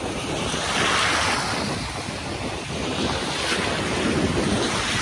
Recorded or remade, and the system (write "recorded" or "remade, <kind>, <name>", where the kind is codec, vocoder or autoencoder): recorded